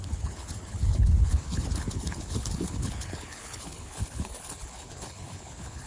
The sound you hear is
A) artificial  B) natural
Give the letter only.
A